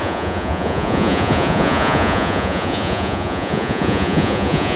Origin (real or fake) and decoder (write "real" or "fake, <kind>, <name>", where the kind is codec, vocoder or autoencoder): fake, vocoder, Vocos